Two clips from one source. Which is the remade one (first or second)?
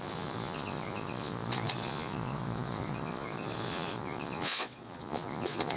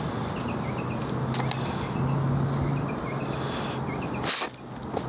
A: first